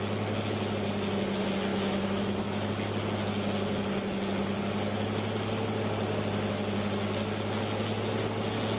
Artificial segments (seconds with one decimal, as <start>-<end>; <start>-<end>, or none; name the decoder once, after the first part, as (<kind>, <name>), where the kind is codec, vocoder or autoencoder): 1.7-2.7 (autoencoder, DAC-VAE)